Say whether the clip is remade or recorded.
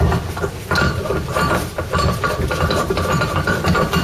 recorded